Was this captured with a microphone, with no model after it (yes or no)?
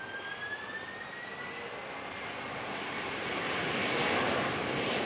yes